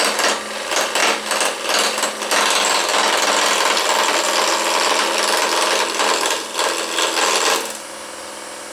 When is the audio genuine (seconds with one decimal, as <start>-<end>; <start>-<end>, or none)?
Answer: 0.0-8.7